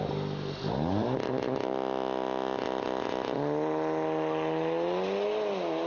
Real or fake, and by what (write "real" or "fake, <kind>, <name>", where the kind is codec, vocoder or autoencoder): real